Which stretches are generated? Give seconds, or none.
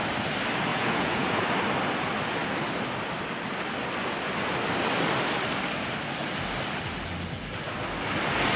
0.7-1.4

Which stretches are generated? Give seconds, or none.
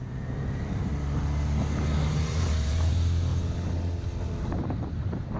0.0-0.9; 2.1-3.3; 4.4-5.4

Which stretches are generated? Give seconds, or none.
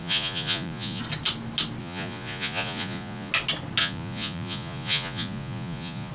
0.0-1.0; 1.8-3.3; 3.8-6.1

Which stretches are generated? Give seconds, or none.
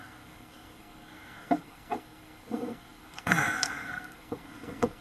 0.0-5.0